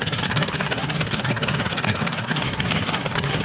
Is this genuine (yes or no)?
no